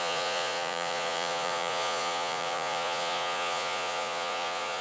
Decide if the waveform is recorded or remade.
remade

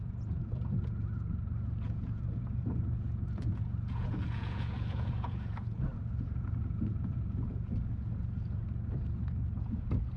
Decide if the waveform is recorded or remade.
remade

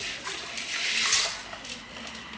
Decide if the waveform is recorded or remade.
recorded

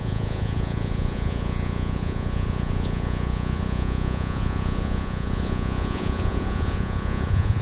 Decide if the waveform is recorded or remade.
remade